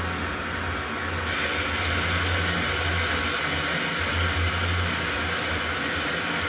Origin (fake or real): real